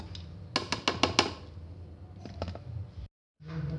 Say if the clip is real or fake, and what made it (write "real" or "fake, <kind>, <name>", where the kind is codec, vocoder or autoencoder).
real